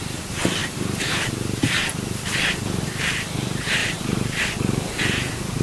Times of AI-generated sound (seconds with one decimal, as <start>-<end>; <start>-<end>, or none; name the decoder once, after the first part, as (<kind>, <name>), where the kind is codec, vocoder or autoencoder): 0.6-1.8 (vocoder, BigVGAN v2); 3.8-4.4